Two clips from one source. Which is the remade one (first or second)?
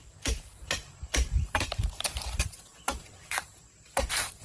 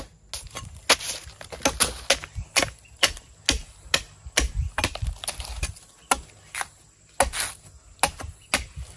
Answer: first